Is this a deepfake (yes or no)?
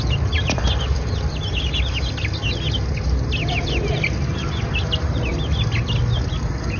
no